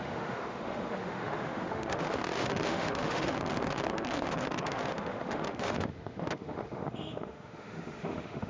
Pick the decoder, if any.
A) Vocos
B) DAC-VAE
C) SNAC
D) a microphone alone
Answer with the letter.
B